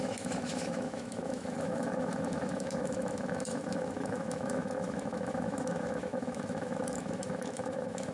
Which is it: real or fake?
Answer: fake